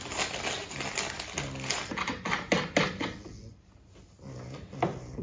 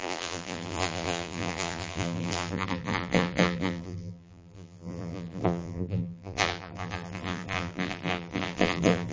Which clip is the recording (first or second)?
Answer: first